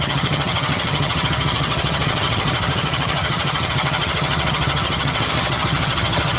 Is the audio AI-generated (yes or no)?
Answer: yes